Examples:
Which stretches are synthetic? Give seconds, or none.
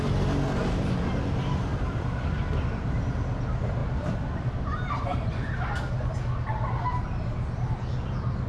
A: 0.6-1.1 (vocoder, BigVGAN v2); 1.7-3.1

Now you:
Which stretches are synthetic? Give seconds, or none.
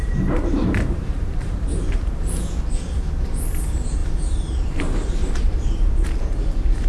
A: 0.0-2.6 (vocoder, BigVGAN v2); 4.0-5.9